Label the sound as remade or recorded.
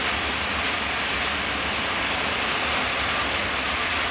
recorded